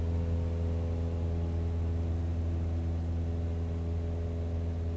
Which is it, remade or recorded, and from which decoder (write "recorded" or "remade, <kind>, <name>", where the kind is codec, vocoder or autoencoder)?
recorded